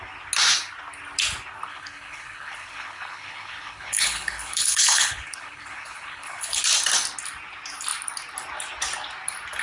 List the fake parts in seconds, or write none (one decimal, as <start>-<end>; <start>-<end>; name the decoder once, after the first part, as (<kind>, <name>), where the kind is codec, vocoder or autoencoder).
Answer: 1.7-6.6 (codec, HILCodec)

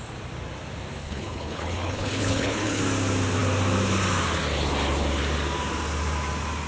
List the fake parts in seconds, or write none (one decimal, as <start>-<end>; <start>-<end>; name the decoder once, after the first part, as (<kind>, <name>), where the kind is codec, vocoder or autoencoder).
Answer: 1.0-2.8 (codec, HILCodec)

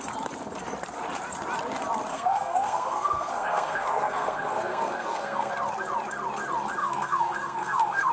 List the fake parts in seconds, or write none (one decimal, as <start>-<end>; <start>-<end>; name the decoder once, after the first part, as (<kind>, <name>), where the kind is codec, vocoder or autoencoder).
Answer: 2.1-5.5 (codec, SNAC); 6.8-8.1

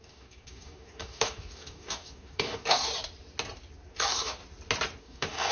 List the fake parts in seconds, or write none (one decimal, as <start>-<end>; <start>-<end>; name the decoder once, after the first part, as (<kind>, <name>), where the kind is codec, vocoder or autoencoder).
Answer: 0.0-2.9 (codec, DAC); 3.9-4.4; 5.0-5.5

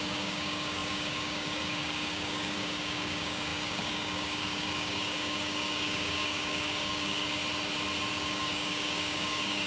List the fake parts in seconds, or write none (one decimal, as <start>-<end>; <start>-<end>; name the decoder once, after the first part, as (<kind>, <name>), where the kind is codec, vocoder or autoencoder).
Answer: 0.0-7.4 (codec, DAC); 8.1-9.7